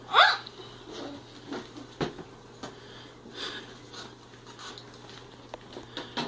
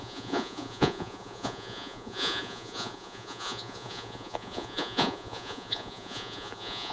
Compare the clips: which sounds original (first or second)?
first